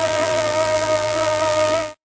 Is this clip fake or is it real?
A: fake